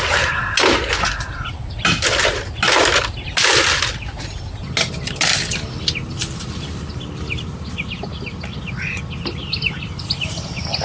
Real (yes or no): yes